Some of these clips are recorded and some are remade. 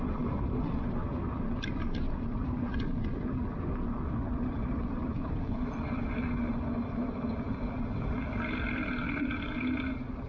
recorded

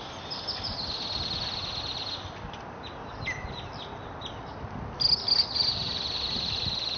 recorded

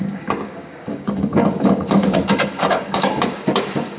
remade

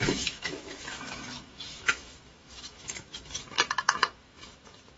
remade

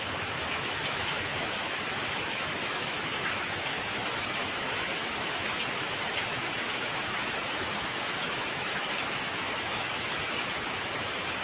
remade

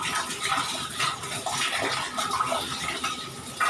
recorded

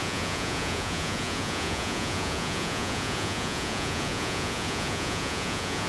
remade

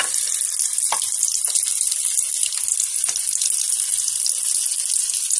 recorded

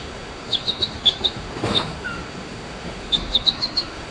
remade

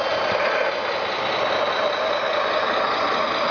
recorded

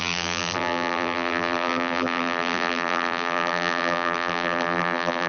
remade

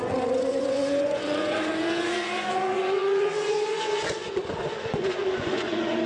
remade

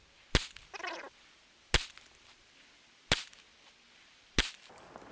recorded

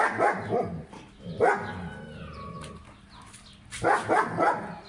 recorded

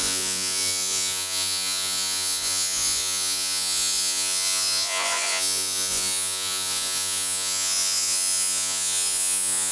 remade